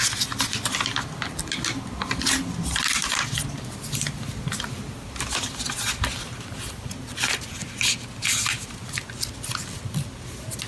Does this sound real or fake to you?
real